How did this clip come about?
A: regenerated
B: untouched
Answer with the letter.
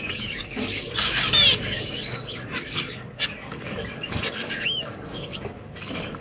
A